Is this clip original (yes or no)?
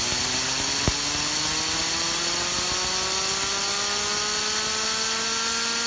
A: yes